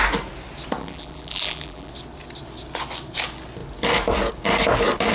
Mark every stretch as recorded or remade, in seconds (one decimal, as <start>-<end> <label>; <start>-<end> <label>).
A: 0.0-0.8 recorded; 0.8-1.9 remade; 1.9-5.1 recorded